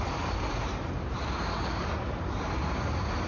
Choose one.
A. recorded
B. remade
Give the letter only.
B